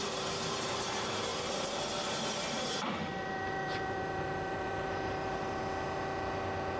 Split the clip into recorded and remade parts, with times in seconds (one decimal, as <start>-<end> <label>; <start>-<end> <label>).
0.0-5.6 remade; 5.6-6.8 recorded